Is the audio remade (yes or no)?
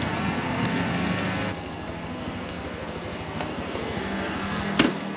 yes